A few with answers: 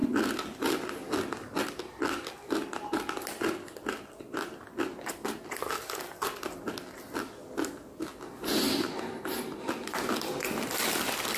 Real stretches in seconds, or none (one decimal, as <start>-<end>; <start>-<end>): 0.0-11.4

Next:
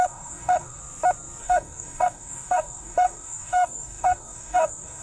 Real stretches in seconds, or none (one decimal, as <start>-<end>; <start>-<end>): 0.8-1.4

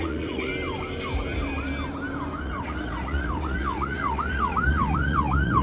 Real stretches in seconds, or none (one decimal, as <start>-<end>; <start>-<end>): 0.5-2.4